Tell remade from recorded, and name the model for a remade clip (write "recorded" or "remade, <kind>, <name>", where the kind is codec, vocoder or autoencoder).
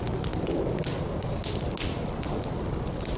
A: recorded